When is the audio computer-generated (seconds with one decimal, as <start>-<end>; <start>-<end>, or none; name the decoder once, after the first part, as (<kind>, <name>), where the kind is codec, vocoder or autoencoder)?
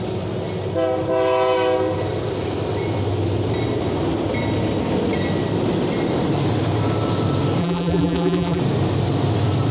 7.6-8.6 (vocoder, BigVGAN v2)